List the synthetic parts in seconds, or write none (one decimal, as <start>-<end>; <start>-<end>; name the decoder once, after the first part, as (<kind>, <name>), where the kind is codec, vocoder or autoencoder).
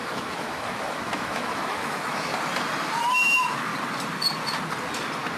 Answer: 0.0-2.3 (autoencoder, DAC-VAE); 3.0-3.7